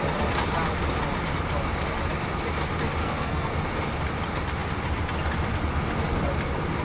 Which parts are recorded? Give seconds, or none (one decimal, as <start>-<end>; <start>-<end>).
0.0-3.0; 3.5-6.8